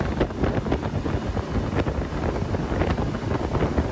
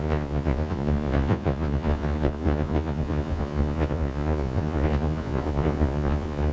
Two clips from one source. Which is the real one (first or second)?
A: first